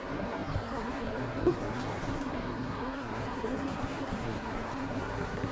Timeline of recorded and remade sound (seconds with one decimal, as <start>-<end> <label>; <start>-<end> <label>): 0.0-5.5 remade